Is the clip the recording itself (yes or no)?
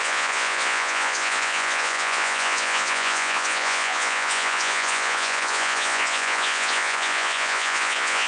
no